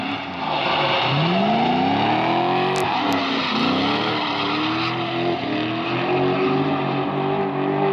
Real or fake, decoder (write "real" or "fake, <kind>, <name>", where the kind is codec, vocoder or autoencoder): real